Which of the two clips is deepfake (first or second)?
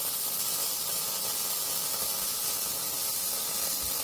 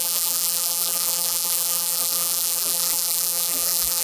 second